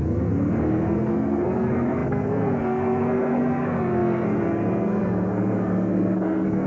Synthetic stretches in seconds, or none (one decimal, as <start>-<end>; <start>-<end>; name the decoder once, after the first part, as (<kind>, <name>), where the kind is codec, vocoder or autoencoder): 0.0-6.7 (codec, SNAC)